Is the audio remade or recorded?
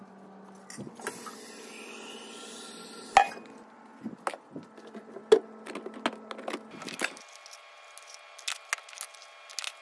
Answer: recorded